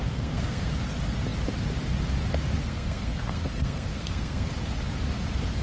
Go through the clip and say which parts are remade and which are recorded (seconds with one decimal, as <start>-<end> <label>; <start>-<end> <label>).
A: 0.0-0.7 remade; 0.7-2.6 recorded; 2.6-4.5 remade; 4.5-5.6 recorded